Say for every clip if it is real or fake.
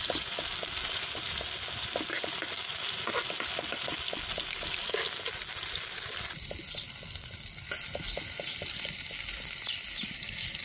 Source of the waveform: real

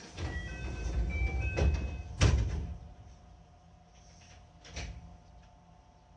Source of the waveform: real